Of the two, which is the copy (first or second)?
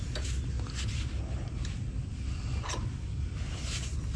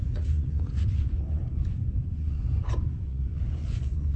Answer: second